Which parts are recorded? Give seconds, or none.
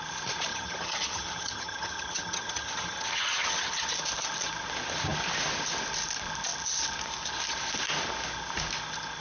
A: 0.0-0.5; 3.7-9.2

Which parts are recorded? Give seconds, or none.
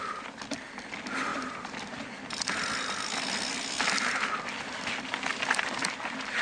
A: 0.0-1.3; 1.8-6.4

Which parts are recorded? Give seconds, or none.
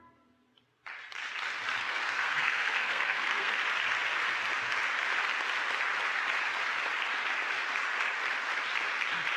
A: 0.0-1.8; 3.5-9.4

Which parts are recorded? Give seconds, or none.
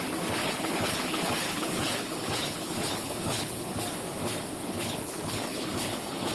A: 0.0-0.4; 3.8-4.6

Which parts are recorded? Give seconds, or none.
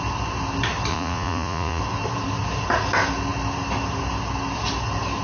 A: 0.0-0.9; 1.8-5.2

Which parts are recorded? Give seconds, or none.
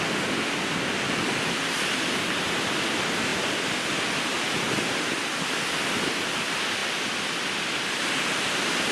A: 0.0-8.9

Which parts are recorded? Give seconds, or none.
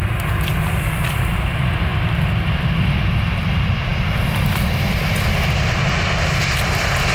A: 0.0-7.1